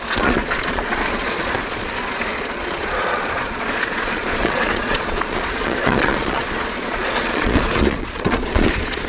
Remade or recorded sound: remade